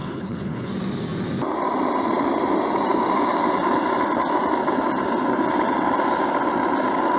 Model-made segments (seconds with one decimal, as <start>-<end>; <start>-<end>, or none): 0.0-0.7